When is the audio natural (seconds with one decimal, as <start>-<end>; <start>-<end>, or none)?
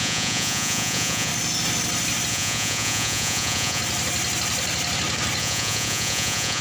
1.3-2.3; 3.8-5.4